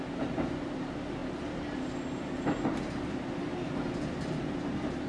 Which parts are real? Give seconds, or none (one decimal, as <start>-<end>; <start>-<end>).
0.0-5.1